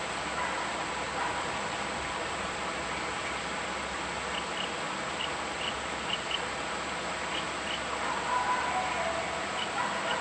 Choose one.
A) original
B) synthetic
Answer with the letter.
A